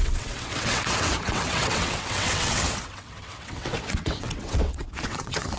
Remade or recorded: remade